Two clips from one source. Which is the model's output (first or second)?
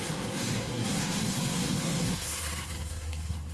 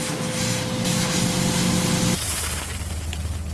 first